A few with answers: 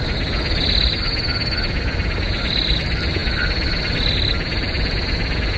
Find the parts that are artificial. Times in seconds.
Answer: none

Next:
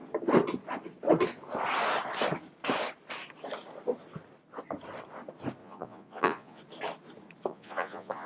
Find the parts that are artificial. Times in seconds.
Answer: 5.6-6.6; 7.5-8.3

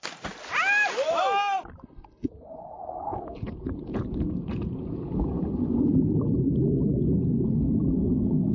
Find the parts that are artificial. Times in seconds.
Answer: 3.1-6.1